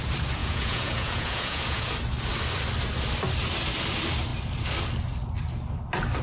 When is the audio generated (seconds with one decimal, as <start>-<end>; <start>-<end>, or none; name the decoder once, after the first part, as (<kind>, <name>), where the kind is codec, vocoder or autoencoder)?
0.4-1.9 (vocoder, Vocos)

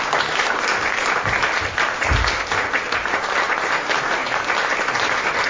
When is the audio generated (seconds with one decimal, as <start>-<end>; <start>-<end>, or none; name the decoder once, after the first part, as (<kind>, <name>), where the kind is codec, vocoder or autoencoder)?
none

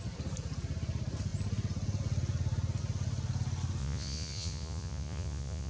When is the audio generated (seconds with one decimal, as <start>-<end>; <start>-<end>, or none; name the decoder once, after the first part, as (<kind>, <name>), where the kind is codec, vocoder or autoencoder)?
3.8-5.7 (vocoder, Vocos)